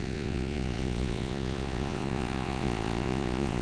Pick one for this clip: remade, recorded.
remade